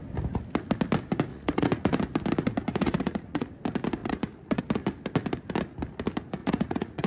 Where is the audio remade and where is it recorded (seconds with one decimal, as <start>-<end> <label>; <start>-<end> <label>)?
0.0-1.3 recorded; 1.3-2.0 remade; 2.0-2.7 recorded; 2.7-3.5 remade; 3.5-4.0 recorded; 4.0-4.6 remade; 4.6-6.4 recorded; 6.4-7.1 remade